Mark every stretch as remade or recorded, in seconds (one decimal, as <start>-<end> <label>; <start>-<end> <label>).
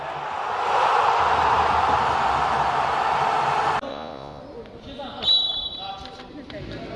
0.0-3.9 recorded; 3.9-4.4 remade; 4.4-7.0 recorded